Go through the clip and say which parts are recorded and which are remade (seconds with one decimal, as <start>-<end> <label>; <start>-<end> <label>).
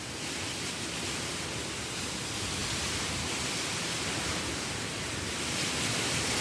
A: 0.0-6.4 recorded